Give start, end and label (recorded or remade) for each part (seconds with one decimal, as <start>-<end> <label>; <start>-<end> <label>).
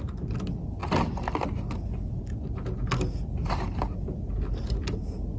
0.0-5.4 recorded